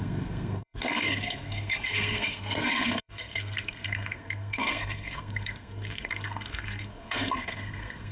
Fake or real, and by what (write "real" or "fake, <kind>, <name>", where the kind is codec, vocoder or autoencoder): fake, codec, SNAC